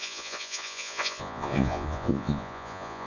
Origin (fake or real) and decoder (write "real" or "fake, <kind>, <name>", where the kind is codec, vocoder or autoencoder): fake, vocoder, Vocos